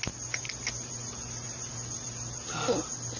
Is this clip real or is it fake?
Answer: real